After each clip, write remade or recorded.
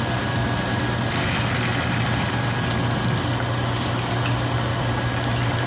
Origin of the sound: recorded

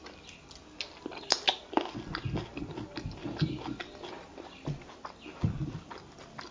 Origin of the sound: recorded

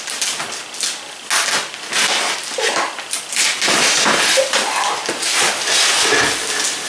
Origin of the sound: recorded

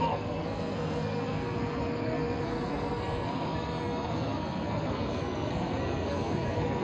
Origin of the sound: remade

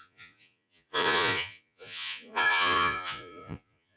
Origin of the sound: remade